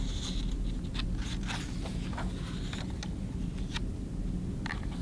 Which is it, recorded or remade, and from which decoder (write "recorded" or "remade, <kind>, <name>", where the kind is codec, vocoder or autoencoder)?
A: recorded